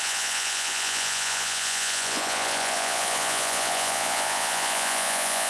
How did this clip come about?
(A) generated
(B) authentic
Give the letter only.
A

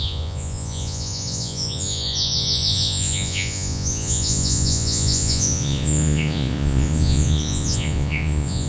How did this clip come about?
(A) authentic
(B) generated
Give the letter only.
B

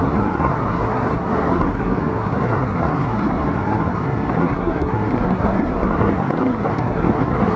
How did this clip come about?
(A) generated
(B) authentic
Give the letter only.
A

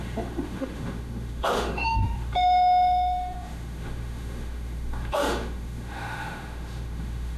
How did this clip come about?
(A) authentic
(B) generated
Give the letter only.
B